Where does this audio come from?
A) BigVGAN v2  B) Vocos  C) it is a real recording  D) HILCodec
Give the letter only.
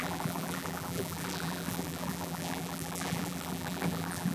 A